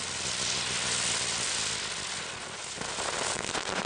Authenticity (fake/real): real